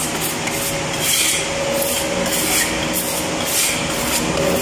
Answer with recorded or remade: recorded